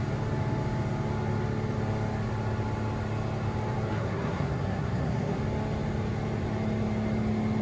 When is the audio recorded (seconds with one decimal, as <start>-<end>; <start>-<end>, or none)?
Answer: 0.0-3.9; 5.4-7.6